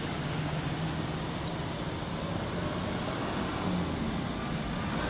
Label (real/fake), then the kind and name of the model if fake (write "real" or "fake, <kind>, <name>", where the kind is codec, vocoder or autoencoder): real